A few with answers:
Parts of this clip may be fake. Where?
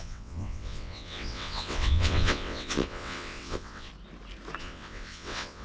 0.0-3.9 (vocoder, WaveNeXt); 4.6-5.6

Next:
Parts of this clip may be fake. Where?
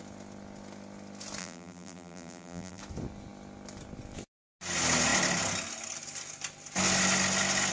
1.4-2.8 (vocoder, BigVGAN v2)